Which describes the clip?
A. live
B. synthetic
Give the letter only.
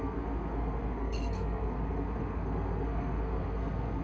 B